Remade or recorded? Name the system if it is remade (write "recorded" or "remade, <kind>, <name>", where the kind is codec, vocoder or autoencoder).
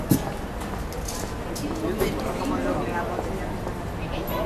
recorded